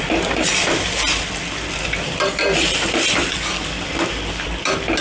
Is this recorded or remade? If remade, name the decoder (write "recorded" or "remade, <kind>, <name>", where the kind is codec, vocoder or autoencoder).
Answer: remade, vocoder, BigVGAN v2